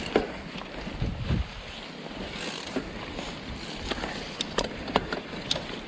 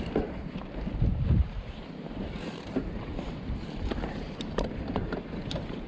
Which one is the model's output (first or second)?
second